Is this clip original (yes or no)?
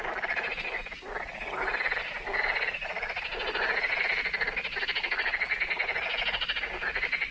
yes